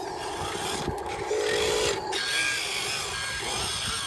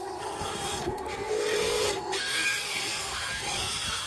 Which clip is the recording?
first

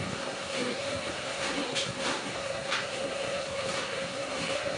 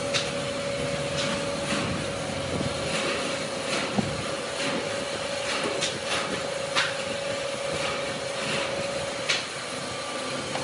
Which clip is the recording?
second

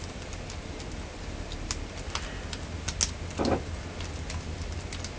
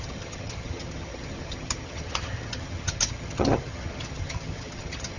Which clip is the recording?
first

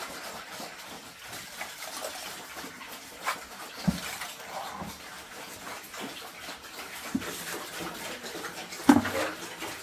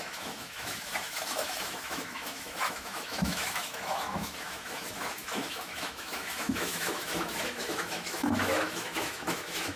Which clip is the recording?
first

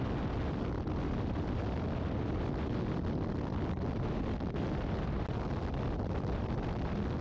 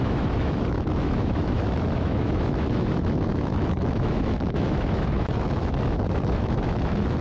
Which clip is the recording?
first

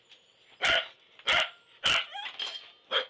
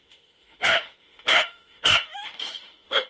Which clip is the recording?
first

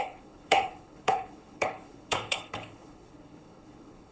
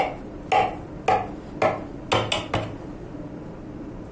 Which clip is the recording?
second